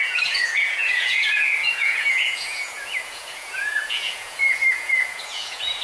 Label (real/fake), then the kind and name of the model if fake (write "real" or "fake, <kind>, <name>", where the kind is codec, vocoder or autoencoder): fake, vocoder, Vocos